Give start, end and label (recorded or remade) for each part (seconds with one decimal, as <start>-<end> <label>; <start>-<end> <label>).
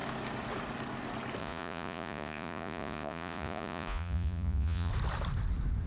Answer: 0.0-1.4 recorded; 1.4-4.9 remade; 4.9-5.9 recorded